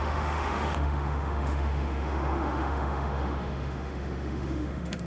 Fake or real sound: fake